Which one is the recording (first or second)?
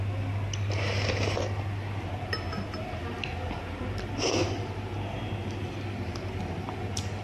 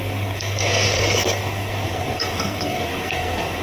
first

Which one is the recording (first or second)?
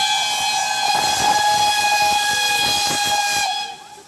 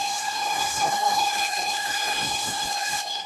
first